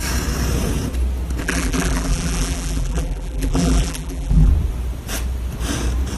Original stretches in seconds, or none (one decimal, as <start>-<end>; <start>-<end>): 0.0-1.4; 4.5-6.2